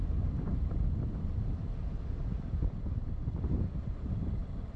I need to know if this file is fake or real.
real